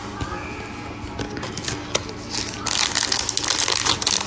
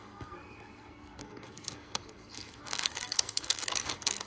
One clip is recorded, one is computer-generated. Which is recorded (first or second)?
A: first